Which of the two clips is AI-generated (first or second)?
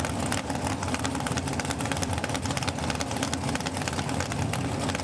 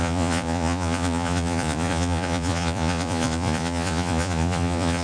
second